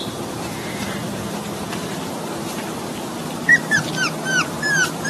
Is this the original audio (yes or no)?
no